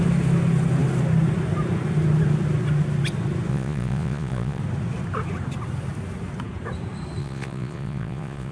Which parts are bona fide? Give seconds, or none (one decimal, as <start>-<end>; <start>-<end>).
0.0-3.5; 4.6-7.2